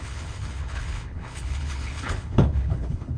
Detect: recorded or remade remade